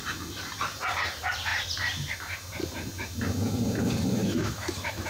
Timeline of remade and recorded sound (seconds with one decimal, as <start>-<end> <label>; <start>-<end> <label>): 0.0-4.2 recorded; 4.2-5.1 remade